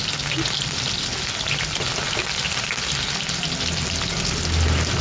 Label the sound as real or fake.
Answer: real